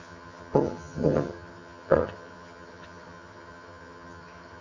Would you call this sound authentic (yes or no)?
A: no